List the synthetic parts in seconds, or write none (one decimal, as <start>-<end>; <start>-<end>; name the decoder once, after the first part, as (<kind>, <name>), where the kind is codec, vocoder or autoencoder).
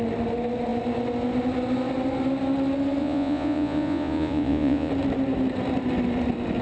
3.0-4.9 (vocoder, Vocos)